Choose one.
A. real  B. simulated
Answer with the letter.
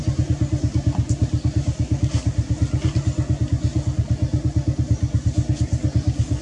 A